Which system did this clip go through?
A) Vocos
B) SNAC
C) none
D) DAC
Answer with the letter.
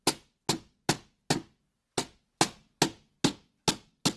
C